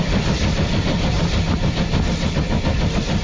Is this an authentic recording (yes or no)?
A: yes